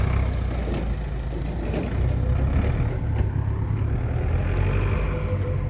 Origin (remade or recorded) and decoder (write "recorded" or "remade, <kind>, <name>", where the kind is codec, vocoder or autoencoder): recorded